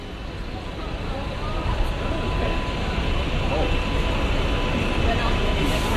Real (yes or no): yes